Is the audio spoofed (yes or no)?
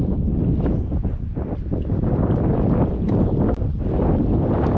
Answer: no